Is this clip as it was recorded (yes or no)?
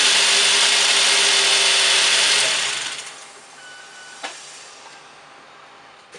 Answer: yes